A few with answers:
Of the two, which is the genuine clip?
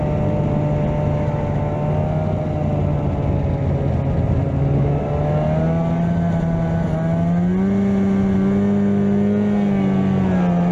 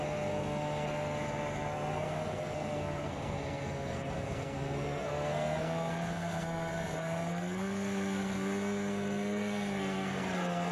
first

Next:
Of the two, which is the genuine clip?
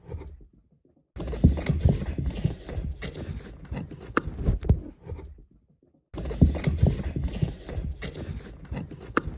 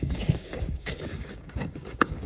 first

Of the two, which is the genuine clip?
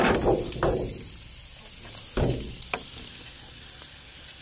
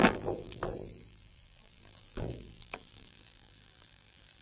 first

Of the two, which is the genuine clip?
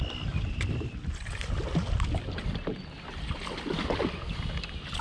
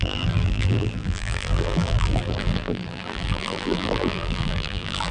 first